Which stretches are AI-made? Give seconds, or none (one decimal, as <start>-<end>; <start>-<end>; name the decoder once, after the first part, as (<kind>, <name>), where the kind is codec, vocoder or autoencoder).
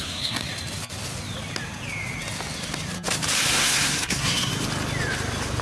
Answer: 0.0-0.5 (codec, SNAC); 3.5-4.5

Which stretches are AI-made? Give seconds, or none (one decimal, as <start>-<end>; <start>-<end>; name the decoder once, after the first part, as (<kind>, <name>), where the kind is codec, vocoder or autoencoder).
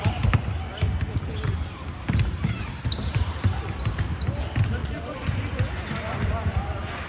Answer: 4.8-5.4 (vocoder, Vocos)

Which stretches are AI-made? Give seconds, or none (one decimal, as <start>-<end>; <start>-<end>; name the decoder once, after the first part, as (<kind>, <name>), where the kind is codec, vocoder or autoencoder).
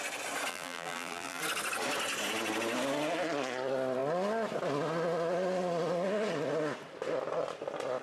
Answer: 0.5-1.4 (vocoder, BigVGAN v2)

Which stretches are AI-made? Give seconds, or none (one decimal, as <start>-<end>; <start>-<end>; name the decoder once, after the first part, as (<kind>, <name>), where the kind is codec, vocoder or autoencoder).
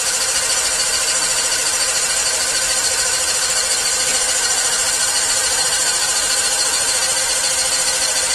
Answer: 2.2-7.2 (vocoder, BigVGAN v2)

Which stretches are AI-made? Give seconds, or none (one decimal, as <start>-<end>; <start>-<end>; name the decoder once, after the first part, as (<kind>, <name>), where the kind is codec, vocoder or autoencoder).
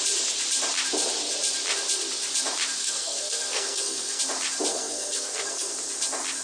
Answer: 2.8-4.2 (codec, SNAC); 4.7-5.7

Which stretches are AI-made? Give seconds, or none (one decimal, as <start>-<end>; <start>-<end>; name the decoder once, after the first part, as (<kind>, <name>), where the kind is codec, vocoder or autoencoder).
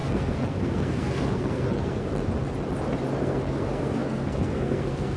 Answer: 0.0-2.1 (codec, SNAC); 3.2-5.2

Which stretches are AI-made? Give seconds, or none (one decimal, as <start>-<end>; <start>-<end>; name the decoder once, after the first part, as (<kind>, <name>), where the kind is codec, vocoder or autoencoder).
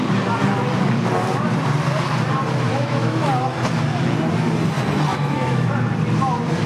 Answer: 2.7-3.3 (autoencoder, DAC-VAE); 5.1-5.7